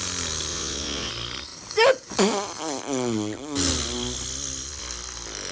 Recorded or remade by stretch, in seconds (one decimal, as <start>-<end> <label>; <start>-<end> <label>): 0.0-0.5 recorded; 0.5-1.1 remade; 1.1-5.5 recorded